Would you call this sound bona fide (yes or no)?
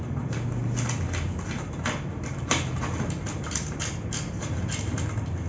yes